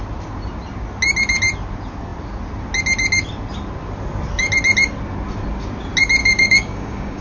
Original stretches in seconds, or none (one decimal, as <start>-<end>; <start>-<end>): 0.0-6.2